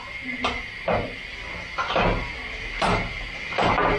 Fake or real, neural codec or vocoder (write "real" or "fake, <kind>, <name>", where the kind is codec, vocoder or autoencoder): real